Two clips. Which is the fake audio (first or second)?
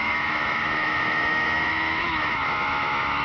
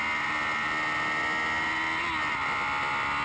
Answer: first